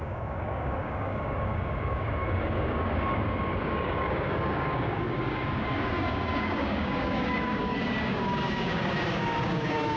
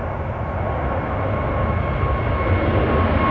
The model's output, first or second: first